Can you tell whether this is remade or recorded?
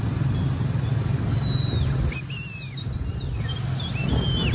recorded